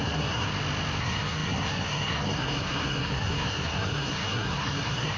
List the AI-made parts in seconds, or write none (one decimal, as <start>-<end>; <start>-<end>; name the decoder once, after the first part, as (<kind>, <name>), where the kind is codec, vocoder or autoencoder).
0.0-0.5 (codec, SNAC); 1.0-5.2